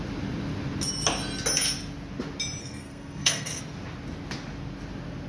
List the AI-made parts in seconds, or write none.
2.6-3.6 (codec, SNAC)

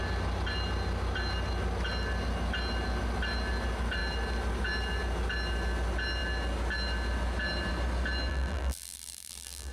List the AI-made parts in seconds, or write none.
8.3-9.7 (vocoder, BigVGAN v2)

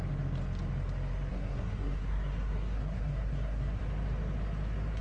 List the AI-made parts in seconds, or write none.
1.3-3.8 (codec, SNAC)